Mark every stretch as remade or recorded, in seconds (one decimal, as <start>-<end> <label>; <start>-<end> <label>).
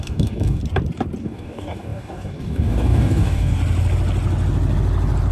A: 0.0-0.6 remade; 0.6-1.2 recorded; 1.2-3.6 remade; 3.6-5.3 recorded